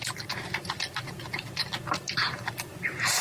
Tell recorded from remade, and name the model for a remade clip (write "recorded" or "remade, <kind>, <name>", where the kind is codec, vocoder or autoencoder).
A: recorded